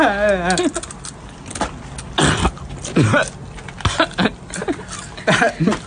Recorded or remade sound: recorded